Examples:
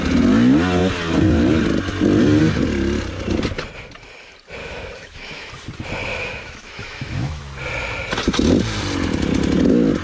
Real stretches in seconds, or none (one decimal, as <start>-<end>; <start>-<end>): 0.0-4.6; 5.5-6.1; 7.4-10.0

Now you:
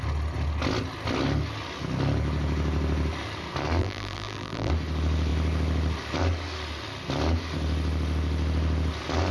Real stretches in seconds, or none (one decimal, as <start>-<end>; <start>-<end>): 0.0-3.8; 4.7-9.3

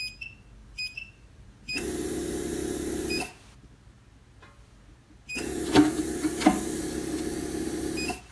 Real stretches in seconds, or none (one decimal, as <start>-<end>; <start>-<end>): 0.0-8.3

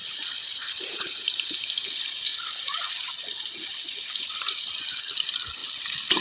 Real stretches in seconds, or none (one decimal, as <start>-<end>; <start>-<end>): 0.0-6.2